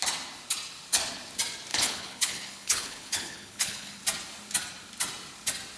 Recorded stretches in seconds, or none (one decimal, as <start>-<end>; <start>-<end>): 0.0-1.7; 4.0-5.8